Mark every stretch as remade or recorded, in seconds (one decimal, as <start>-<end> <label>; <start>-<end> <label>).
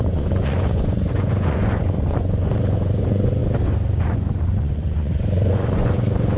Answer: 0.0-3.4 remade; 3.4-4.0 recorded; 4.0-6.4 remade